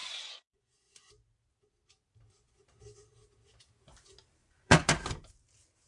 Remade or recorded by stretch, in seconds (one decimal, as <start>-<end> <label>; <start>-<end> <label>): 0.0-1.1 remade; 1.1-4.4 recorded; 4.4-4.9 remade; 4.9-5.9 recorded